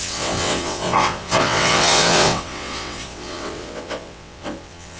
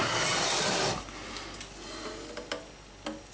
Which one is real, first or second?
second